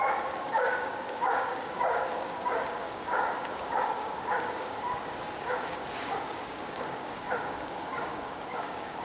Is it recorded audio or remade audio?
remade